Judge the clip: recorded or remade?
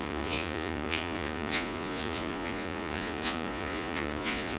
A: remade